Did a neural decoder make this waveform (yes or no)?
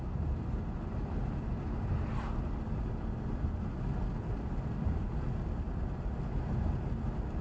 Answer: no